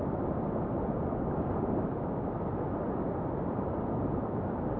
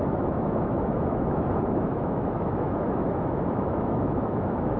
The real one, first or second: first